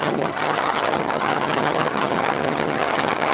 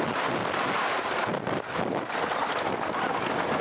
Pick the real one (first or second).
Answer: second